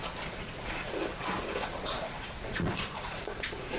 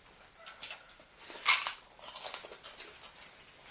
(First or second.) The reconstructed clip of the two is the first